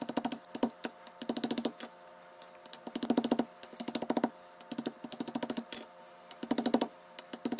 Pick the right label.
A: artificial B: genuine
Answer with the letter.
B